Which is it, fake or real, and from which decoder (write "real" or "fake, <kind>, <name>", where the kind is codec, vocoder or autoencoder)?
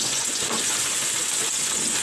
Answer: fake, vocoder, Vocos